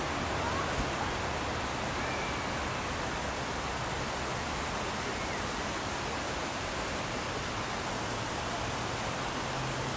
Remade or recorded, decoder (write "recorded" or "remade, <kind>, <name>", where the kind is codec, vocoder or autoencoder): recorded